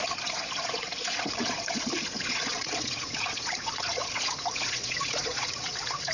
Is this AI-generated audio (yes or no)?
yes